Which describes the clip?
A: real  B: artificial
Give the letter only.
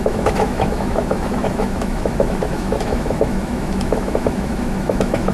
B